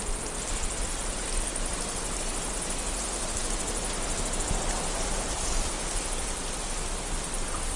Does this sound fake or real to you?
real